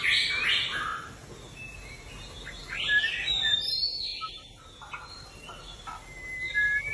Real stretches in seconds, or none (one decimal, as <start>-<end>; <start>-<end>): 0.0-6.9